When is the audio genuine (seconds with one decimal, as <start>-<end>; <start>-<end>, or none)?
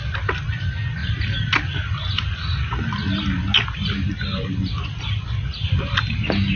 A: 0.0-6.6